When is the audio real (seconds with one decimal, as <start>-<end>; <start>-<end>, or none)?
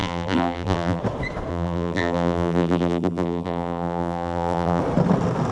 1.0-1.5; 4.8-5.5